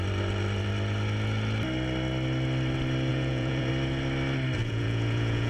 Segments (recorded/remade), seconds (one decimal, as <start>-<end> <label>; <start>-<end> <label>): 0.0-3.1 recorded; 3.1-3.7 remade; 3.7-4.6 recorded; 4.6-5.5 remade